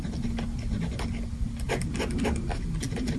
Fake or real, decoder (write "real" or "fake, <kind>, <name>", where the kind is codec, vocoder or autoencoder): real